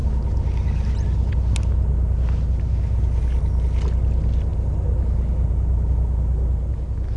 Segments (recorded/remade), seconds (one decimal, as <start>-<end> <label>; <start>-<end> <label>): 0.0-7.2 recorded